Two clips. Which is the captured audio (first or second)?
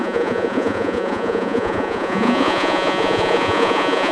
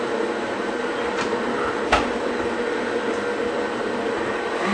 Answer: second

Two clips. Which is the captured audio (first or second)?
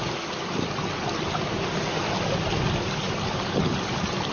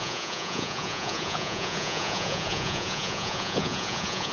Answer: first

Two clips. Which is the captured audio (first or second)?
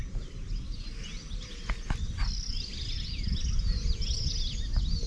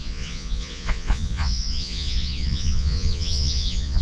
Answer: first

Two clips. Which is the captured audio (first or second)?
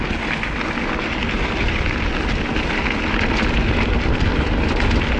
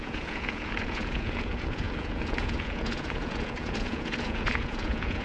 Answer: first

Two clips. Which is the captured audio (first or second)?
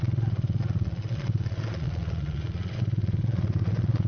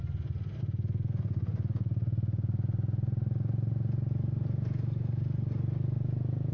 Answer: second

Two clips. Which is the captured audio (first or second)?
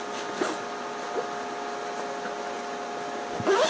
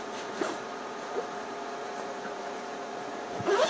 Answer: first